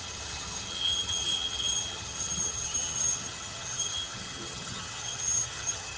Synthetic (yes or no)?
yes